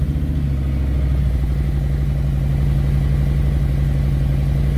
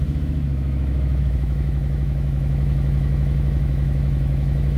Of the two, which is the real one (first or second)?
first